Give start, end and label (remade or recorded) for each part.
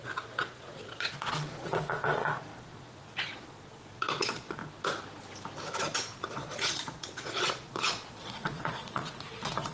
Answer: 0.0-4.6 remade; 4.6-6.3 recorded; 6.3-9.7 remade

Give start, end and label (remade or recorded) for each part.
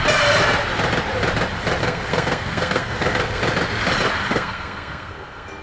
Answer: 0.0-1.8 recorded; 1.8-3.4 remade; 3.4-4.3 recorded; 4.3-5.6 remade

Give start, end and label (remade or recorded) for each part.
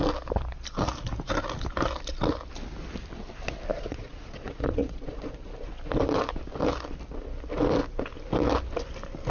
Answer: 0.0-3.7 recorded; 3.7-5.8 remade; 5.8-9.3 recorded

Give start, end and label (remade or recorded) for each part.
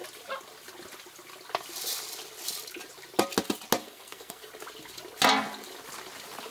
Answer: 0.0-3.8 recorded; 3.8-4.5 remade; 4.5-6.5 recorded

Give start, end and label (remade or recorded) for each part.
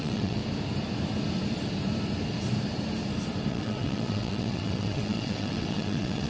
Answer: 0.0-0.4 remade; 0.4-3.5 recorded; 3.5-6.3 remade